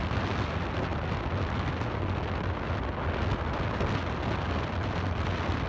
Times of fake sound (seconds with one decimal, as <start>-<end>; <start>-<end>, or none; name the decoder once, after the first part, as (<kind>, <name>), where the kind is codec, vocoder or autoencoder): none